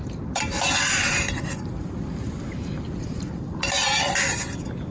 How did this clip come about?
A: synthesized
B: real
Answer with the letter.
A